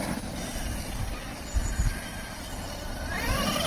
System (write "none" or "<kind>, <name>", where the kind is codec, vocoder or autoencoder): none